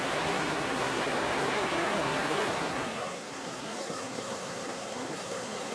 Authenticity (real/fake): fake